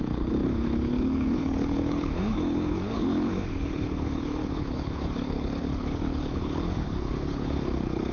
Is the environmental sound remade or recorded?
remade